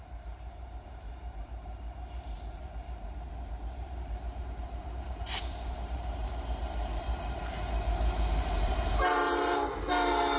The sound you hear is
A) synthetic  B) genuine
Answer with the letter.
A